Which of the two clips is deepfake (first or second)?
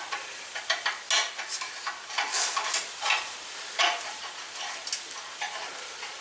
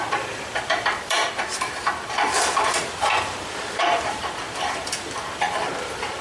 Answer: second